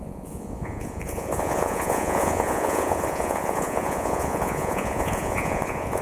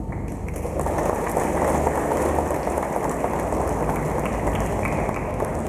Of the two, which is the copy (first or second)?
first